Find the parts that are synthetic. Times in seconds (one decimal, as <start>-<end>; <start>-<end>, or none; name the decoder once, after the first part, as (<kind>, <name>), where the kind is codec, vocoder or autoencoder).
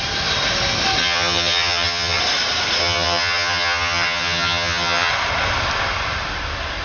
1.0-2.2 (vocoder, HiFi-GAN); 2.8-5.1